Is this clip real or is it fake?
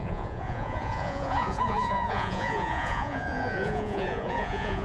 fake